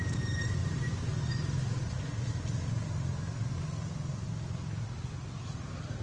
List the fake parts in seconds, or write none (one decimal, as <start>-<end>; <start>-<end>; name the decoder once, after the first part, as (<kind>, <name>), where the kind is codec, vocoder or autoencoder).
none